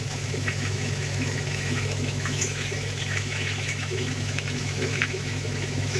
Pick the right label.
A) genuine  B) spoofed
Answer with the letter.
B